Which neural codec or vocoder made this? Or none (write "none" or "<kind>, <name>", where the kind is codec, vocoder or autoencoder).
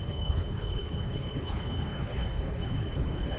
codec, HILCodec